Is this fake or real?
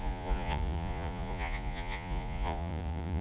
fake